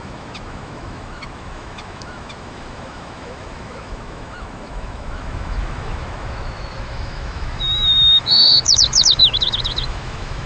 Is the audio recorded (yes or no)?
no